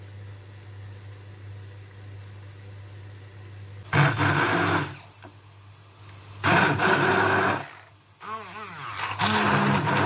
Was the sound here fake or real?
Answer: real